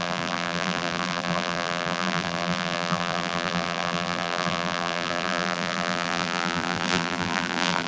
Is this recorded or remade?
remade